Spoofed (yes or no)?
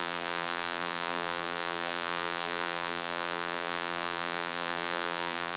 yes